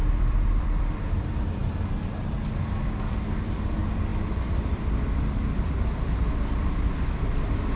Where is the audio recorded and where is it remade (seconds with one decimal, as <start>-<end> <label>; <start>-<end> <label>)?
0.0-7.8 remade